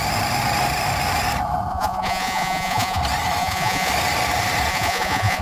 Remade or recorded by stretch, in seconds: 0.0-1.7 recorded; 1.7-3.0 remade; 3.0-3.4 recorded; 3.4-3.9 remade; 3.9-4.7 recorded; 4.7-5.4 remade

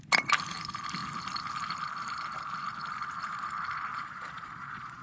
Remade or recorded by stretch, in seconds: 0.0-3.9 recorded; 3.9-5.0 remade

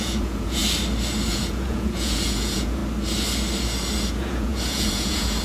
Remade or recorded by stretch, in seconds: 0.0-0.6 remade; 0.6-1.3 recorded; 1.3-2.8 remade; 2.8-4.1 recorded; 4.1-5.4 remade

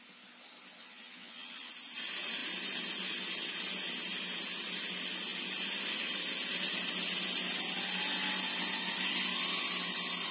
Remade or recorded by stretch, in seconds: 0.0-0.8 recorded; 0.8-1.7 remade; 1.7-10.3 recorded

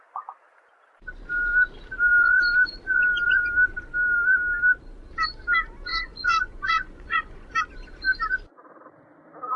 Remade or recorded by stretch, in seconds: 0.0-5.9 recorded; 5.9-7.5 remade; 7.5-9.6 recorded

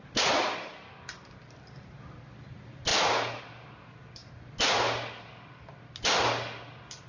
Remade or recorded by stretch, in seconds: 0.0-7.1 recorded